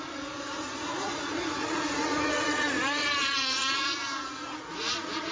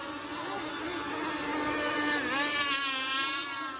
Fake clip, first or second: first